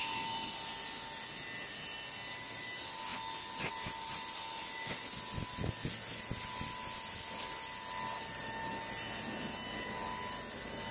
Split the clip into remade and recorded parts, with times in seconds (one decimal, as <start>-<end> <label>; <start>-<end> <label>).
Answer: 0.0-10.9 recorded

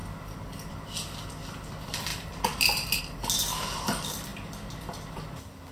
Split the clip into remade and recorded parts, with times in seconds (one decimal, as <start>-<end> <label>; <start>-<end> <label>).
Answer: 0.0-2.1 recorded; 2.1-3.0 remade; 3.0-5.7 recorded

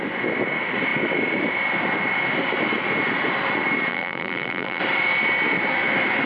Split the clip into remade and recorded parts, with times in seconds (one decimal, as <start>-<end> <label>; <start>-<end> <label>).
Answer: 0.0-3.9 recorded; 3.9-4.8 remade; 4.8-6.3 recorded